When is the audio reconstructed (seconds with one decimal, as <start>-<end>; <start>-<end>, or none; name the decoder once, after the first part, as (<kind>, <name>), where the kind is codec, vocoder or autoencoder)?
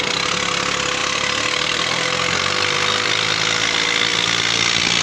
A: 1.0-3.1 (vocoder, BigVGAN v2)